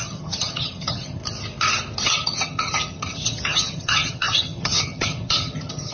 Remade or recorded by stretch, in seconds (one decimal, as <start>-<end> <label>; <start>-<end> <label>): 0.0-1.2 remade; 1.2-2.0 recorded; 2.0-5.9 remade